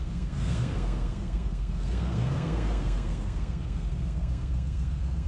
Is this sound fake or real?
fake